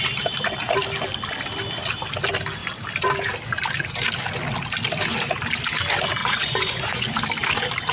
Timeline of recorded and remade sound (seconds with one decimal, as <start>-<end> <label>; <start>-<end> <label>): 0.0-6.2 recorded; 6.2-7.1 remade; 7.1-7.9 recorded